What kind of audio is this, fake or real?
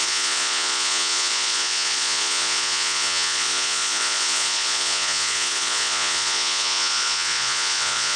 fake